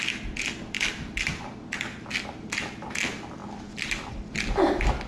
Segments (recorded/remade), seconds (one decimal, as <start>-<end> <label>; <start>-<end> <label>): 0.0-5.1 recorded